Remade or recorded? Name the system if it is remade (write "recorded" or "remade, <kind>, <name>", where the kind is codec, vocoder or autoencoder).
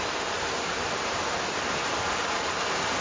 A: remade, vocoder, BigVGAN v2